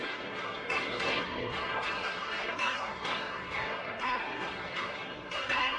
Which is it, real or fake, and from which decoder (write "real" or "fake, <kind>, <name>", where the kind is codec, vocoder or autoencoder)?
fake, codec, SNAC